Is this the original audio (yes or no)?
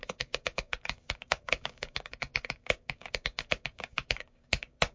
no